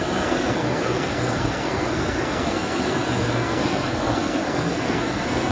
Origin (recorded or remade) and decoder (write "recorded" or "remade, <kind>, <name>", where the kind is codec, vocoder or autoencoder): remade, codec, SNAC